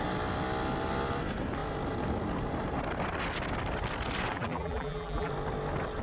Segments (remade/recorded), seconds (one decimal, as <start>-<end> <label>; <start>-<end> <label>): 0.0-4.3 recorded; 4.3-5.3 remade; 5.3-6.0 recorded

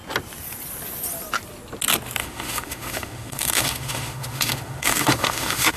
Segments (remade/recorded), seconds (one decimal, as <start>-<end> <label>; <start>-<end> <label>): 0.0-2.2 recorded; 2.2-5.8 remade

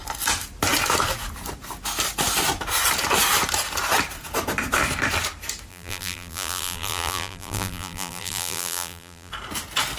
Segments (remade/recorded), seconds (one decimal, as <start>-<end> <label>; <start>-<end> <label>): 0.0-5.7 recorded; 5.7-9.3 remade; 9.3-10.0 recorded

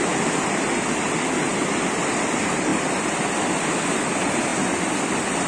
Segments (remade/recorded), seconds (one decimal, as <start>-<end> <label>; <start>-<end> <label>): 0.0-5.5 recorded